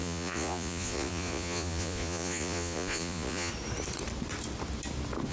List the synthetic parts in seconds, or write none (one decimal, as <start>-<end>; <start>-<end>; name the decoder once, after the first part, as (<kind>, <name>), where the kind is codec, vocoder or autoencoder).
0.0-3.5 (vocoder, Vocos)